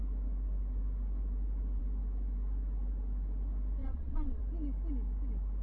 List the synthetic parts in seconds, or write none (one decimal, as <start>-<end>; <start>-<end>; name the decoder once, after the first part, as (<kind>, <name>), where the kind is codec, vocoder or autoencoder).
3.8-4.4 (vocoder, WaveNeXt)